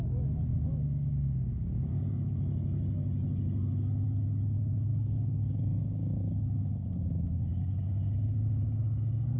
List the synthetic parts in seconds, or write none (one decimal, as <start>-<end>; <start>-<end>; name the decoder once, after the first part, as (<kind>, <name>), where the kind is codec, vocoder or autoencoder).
0.5-2.3 (codec, DAC); 4.9-8.8